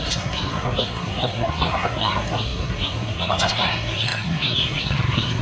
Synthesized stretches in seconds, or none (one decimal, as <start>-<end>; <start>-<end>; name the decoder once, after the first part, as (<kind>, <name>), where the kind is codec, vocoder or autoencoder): 0.0-5.4 (codec, SNAC)